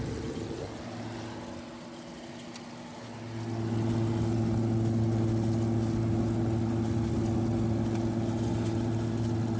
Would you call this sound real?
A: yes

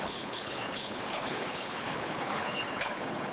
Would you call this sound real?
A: no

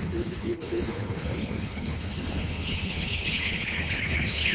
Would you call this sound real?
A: no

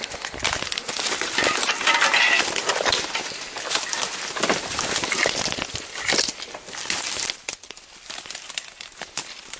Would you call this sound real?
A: yes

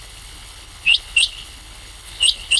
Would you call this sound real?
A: no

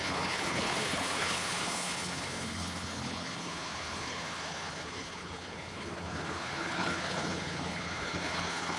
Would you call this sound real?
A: no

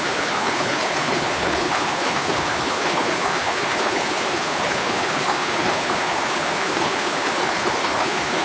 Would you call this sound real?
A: no